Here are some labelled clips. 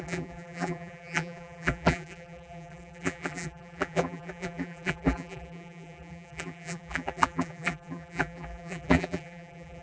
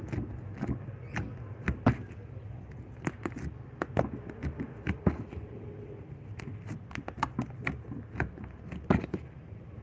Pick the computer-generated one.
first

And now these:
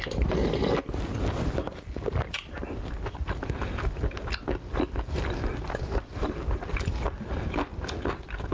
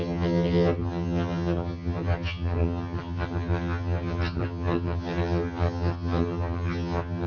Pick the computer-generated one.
second